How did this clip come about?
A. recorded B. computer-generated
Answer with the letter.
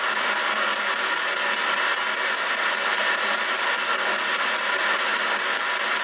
A